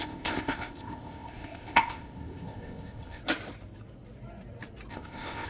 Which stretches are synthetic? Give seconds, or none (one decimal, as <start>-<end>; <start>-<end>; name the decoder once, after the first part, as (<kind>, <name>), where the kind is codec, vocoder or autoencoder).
0.0-3.2 (codec, ZipCodec); 4.9-5.5